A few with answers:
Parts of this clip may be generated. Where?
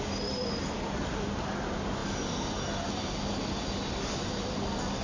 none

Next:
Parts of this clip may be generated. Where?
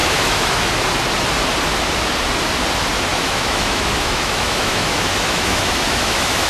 0.0-0.7 (autoencoder, DAC-VAE); 3.1-6.5